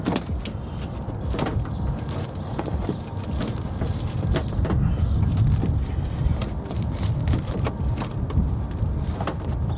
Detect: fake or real real